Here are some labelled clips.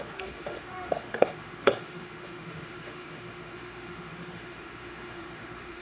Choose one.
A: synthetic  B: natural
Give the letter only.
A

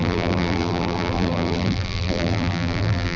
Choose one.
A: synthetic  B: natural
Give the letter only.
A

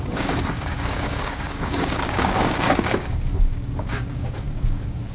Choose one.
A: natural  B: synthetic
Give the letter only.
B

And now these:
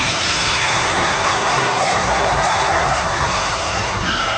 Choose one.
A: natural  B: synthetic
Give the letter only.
B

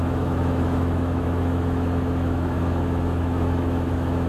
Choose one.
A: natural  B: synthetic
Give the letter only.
B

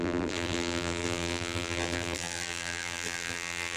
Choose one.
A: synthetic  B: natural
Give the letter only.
A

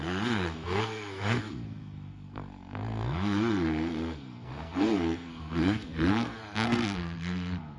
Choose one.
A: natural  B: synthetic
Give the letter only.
B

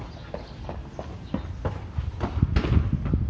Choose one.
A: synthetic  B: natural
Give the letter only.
B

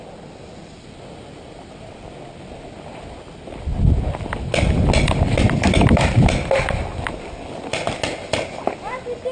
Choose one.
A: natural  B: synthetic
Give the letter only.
A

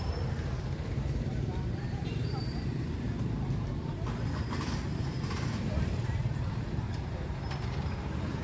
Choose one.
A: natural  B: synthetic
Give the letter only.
B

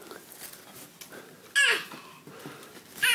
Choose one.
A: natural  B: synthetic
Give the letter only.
A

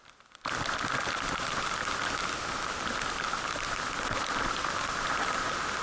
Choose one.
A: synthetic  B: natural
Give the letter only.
B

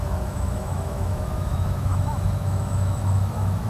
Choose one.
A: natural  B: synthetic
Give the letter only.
B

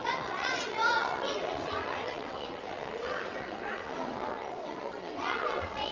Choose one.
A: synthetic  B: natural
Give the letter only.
A